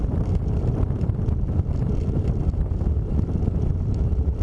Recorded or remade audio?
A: recorded